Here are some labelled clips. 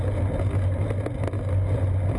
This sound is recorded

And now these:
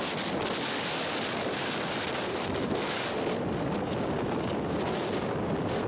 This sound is recorded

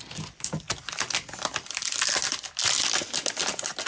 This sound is recorded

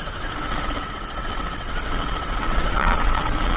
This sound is remade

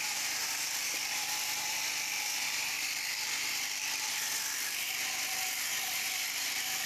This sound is remade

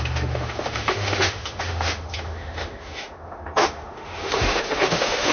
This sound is remade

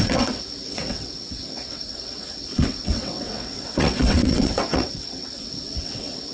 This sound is remade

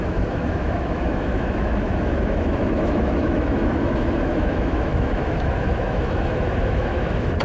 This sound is remade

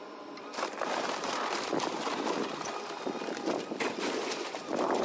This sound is remade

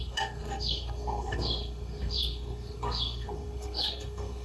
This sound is remade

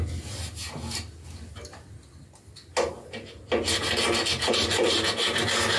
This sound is recorded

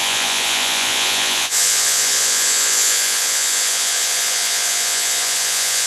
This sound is remade